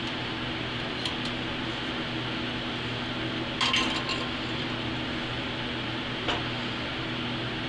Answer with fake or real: real